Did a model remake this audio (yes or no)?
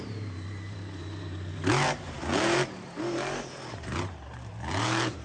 yes